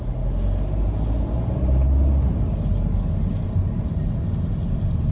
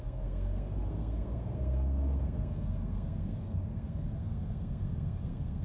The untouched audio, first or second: first